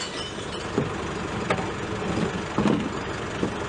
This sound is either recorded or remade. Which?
recorded